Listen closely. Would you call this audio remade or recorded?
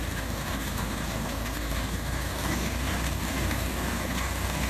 remade